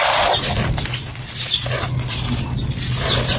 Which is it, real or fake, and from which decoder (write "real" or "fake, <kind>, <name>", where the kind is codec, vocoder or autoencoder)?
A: real